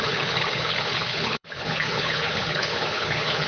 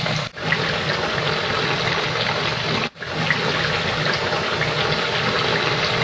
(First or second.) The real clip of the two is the second